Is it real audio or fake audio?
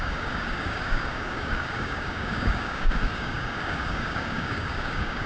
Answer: fake